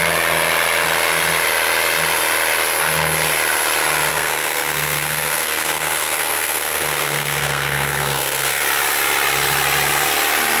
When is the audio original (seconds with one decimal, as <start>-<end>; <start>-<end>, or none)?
0.0-4.1; 8.6-10.6